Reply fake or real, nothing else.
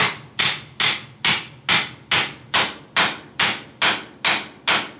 real